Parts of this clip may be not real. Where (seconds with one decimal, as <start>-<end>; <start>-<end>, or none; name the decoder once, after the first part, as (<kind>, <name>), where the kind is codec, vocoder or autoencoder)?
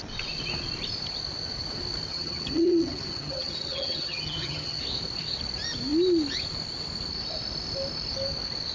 2.1-4.8 (vocoder, HiFi-GAN)